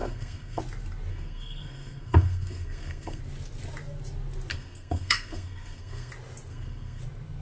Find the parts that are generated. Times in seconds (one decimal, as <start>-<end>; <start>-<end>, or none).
0.0-0.6; 1.1-3.2; 4.5-6.1; 6.5-7.0